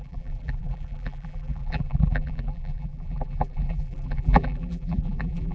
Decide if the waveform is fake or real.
fake